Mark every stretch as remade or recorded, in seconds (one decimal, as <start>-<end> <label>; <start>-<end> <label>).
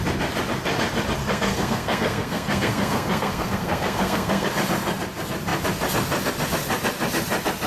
0.0-1.2 recorded; 1.2-4.5 remade; 4.5-7.7 recorded